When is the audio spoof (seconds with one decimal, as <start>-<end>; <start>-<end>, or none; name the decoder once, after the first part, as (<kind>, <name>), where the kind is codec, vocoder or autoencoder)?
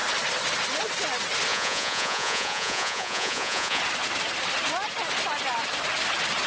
1.5-3.8 (vocoder, Vocos)